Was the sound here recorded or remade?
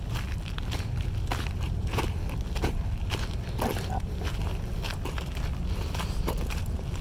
remade